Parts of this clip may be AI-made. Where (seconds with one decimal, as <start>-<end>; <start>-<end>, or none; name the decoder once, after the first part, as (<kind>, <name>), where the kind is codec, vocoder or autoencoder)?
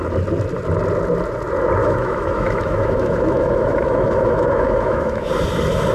1.8-5.3 (autoencoder, DAC-VAE)